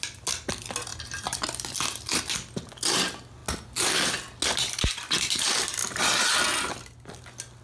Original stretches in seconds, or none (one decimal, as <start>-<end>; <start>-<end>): 0.0-0.9; 1.8-7.6